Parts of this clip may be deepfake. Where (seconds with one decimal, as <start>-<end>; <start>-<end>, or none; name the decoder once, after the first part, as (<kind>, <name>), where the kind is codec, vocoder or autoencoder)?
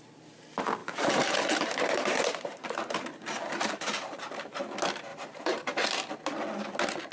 0.8-4.6 (vocoder, BigVGAN v2); 5.1-5.9